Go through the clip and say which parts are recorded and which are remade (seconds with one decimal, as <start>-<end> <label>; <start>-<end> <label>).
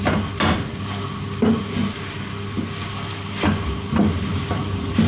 0.0-5.1 recorded